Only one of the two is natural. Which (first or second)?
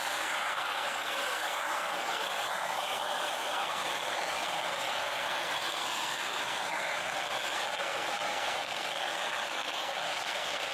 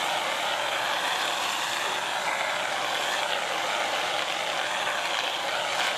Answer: second